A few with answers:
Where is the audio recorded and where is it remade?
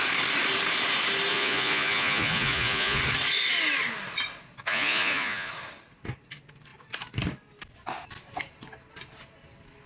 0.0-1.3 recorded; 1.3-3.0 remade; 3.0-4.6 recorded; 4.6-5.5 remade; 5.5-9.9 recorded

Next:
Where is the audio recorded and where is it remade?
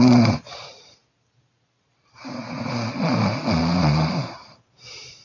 0.0-1.0 remade; 1.0-3.6 recorded; 3.6-5.2 remade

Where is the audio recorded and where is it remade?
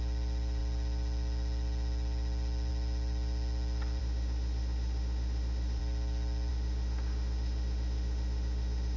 0.0-4.0 recorded; 4.0-5.8 remade; 5.8-6.5 recorded; 6.5-9.0 remade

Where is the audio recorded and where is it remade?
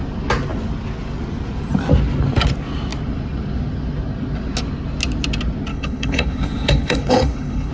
0.0-5.7 recorded; 5.7-7.7 remade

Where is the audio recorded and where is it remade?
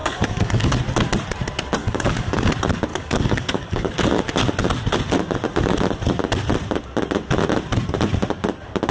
0.0-0.8 remade; 0.8-1.8 recorded; 1.8-2.5 remade; 2.5-2.9 recorded; 2.9-3.9 remade; 3.9-8.9 recorded